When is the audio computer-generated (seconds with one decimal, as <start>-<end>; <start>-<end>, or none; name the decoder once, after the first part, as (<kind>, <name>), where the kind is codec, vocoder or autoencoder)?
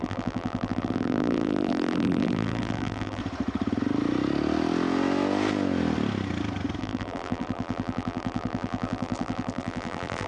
0.0-3.2 (vocoder, BigVGAN v2); 6.8-10.3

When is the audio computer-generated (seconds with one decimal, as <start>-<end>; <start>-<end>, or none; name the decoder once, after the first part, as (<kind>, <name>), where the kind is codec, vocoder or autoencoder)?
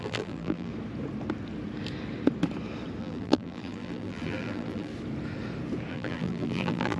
0.0-0.7 (vocoder, BigVGAN v2); 3.0-4.9; 5.9-7.0